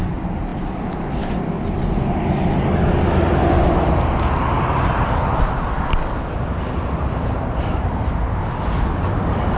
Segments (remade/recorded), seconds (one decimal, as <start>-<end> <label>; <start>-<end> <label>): 0.0-9.6 recorded